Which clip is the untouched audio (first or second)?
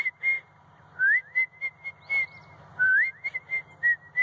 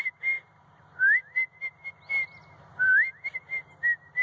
first